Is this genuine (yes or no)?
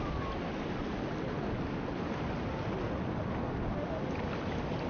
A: yes